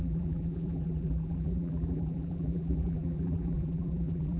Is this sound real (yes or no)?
no